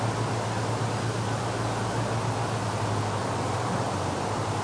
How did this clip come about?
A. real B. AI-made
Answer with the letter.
A